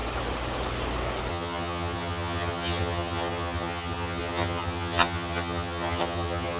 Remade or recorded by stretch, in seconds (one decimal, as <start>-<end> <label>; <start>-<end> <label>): 0.0-1.3 recorded; 1.3-6.6 remade

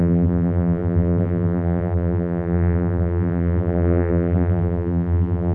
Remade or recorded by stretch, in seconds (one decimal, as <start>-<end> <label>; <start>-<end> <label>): 0.0-5.5 remade

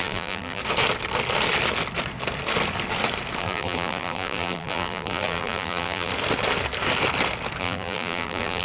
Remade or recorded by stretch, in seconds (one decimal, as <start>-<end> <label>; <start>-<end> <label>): 0.0-0.6 remade; 0.6-3.4 recorded; 3.4-6.1 remade; 6.1-7.6 recorded; 7.6-8.6 remade